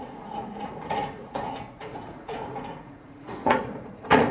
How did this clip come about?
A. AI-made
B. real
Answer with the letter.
A